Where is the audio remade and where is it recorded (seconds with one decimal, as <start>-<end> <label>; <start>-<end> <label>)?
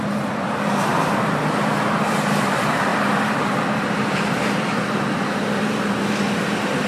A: 0.0-6.9 remade